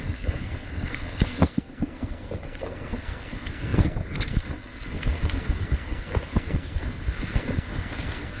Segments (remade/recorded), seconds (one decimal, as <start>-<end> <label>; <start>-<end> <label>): 0.0-8.4 remade